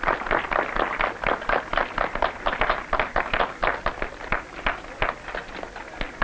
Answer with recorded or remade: recorded